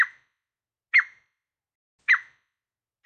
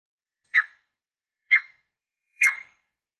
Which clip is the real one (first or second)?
first